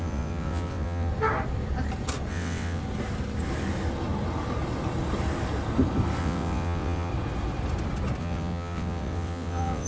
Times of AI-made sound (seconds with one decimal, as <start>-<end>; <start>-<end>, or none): 0.0-1.1; 2.3-2.8; 6.2-7.1; 8.2-9.9